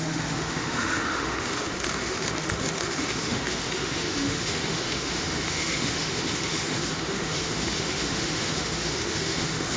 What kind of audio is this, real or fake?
fake